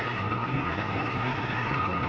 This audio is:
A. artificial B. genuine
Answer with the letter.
A